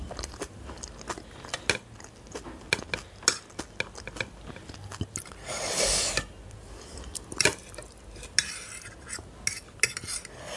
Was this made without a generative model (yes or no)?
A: yes